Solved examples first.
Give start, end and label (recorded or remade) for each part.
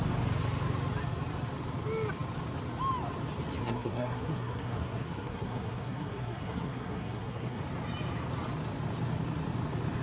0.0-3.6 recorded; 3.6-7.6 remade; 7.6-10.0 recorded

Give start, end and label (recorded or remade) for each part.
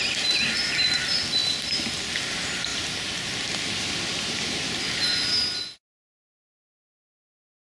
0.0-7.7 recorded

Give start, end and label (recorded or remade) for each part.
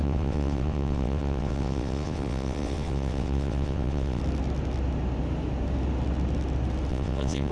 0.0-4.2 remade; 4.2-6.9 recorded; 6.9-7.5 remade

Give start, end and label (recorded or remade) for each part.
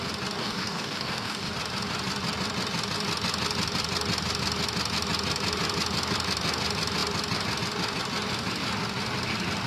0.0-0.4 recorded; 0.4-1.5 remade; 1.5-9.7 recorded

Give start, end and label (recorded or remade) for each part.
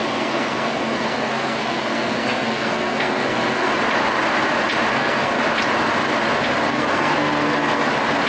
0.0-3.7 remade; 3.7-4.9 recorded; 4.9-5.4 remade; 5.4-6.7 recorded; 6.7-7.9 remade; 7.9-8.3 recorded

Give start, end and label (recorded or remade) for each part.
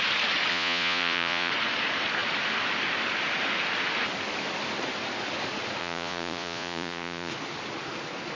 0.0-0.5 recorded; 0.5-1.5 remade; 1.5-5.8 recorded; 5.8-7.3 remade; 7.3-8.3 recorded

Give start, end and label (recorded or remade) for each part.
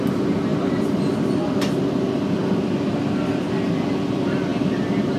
0.0-0.5 recorded; 0.5-1.1 remade; 1.1-5.2 recorded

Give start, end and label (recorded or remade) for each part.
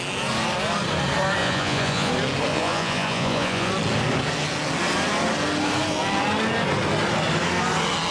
0.0-1.4 recorded; 1.4-2.1 remade; 2.1-2.5 recorded; 2.5-3.7 remade; 3.7-8.1 recorded